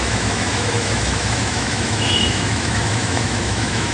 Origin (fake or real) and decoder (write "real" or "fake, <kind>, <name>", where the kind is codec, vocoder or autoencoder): fake, autoencoder, DAC-VAE